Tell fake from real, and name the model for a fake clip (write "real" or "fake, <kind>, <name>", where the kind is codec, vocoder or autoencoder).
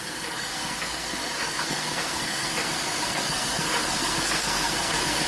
fake, codec, SNAC